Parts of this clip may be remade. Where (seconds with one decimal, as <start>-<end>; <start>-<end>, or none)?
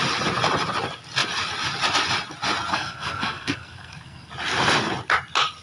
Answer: 2.7-4.3